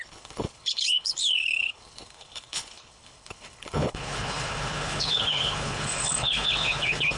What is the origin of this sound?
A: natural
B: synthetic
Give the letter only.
B